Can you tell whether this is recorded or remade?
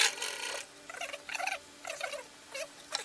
recorded